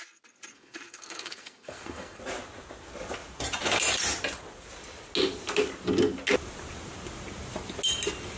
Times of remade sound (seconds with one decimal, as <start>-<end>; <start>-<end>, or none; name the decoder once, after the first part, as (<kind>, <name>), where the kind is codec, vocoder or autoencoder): 0.5-2.2 (codec, SNAC)